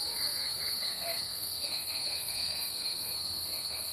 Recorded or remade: remade